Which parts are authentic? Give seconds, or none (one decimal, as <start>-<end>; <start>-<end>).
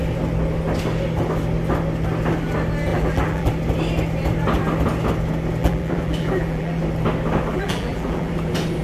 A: 0.0-2.9; 3.5-5.6; 6.8-7.5; 8.3-8.8